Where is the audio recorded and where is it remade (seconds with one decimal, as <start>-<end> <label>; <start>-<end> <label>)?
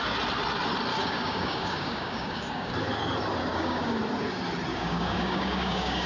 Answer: 0.0-0.9 recorded; 0.9-2.7 remade; 2.7-3.5 recorded; 3.5-4.0 remade; 4.0-4.7 recorded; 4.7-6.1 remade